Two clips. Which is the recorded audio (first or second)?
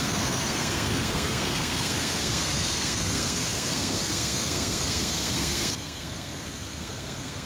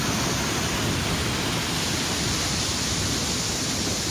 second